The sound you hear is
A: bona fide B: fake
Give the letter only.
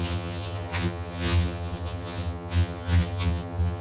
B